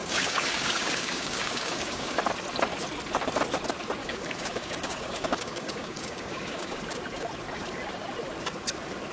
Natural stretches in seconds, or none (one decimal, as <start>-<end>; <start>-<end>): 2.2-4.0; 6.8-9.1